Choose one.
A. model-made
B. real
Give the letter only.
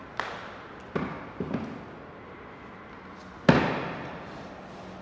B